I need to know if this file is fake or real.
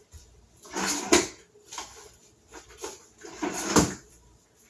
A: real